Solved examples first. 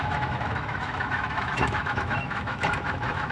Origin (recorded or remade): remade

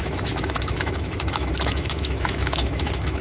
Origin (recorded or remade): remade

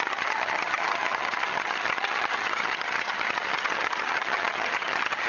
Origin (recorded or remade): remade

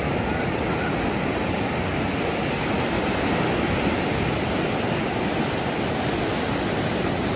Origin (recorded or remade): recorded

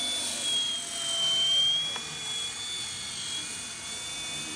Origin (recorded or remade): recorded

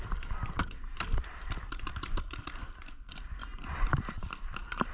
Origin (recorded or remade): recorded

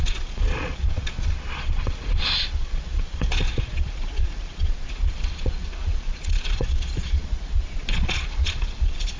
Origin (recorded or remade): remade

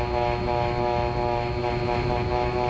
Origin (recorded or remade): recorded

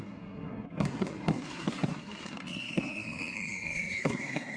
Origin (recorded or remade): remade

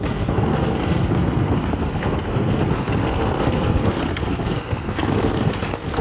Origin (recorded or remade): remade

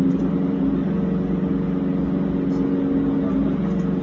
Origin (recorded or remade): recorded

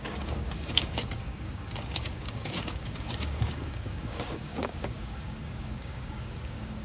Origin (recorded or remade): remade